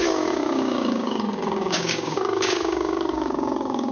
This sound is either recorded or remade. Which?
remade